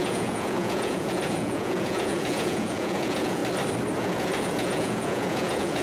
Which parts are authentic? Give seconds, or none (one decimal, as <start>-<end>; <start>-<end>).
3.4-4.0